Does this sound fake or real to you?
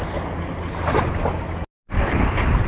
real